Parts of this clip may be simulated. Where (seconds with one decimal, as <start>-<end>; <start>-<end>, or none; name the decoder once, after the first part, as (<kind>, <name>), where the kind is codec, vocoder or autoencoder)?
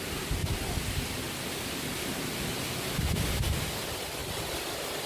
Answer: none